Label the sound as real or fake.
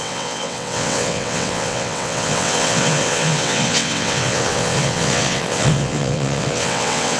fake